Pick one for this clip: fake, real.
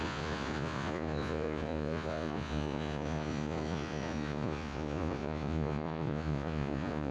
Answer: fake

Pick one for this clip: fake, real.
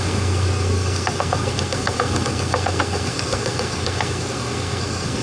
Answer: fake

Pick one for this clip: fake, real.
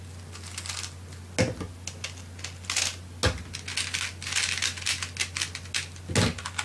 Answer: real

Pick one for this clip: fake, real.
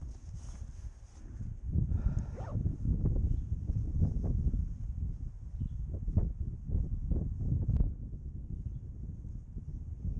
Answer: real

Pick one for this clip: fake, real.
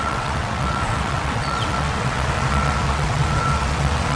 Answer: fake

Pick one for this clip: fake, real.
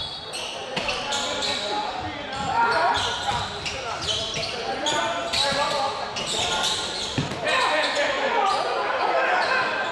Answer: real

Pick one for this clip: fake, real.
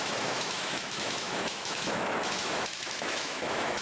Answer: fake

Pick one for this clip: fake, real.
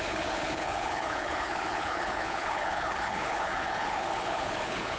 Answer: fake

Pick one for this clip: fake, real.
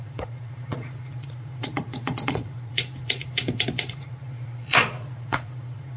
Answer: fake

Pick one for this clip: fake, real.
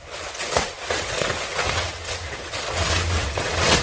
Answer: fake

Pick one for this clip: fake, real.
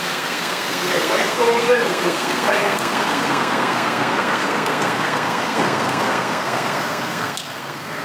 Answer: fake